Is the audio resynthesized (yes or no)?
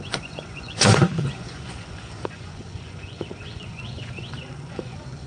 yes